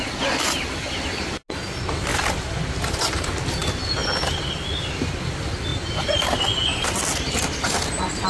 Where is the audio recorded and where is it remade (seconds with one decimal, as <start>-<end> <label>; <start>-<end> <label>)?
0.0-8.3 recorded